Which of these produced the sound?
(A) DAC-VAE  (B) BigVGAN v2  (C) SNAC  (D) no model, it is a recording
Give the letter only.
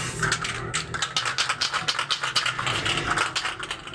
D